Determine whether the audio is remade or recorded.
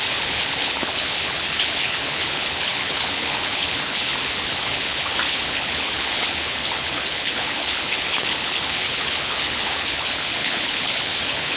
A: remade